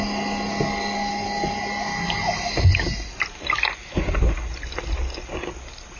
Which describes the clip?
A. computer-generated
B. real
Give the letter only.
B